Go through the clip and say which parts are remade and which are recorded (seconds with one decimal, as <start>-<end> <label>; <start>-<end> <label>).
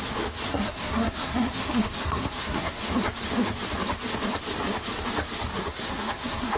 0.0-0.5 recorded; 0.5-2.9 remade; 2.9-5.5 recorded; 5.5-6.6 remade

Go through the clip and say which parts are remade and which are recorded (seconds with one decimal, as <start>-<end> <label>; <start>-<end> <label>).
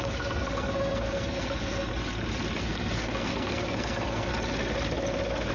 0.0-1.9 remade; 1.9-2.6 recorded; 2.6-4.3 remade; 4.3-5.5 recorded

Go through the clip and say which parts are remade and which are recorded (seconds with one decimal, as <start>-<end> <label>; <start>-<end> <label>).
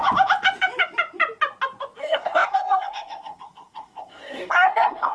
0.0-2.0 recorded; 2.0-5.1 remade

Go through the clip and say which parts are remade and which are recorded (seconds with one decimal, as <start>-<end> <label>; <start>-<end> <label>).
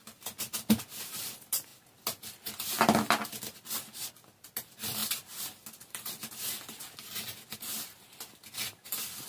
0.0-9.3 recorded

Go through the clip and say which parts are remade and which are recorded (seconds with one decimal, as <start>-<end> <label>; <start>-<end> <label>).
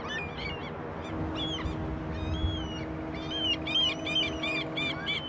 0.0-5.3 recorded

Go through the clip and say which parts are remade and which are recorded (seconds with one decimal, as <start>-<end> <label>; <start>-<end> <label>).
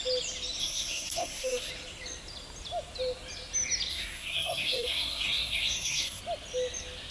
0.0-0.6 recorded; 0.6-1.7 remade; 1.7-3.9 recorded; 3.9-6.2 remade; 6.2-7.1 recorded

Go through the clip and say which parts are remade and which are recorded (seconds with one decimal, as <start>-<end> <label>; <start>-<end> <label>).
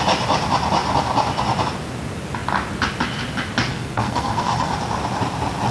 0.0-3.7 recorded; 3.7-4.7 remade; 4.7-5.7 recorded